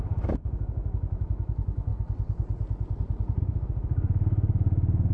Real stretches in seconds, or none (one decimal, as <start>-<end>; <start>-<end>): 1.9-3.4